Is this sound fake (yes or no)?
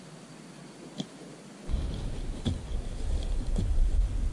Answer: no